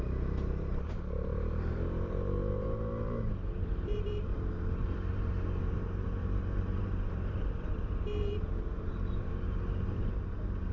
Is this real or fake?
fake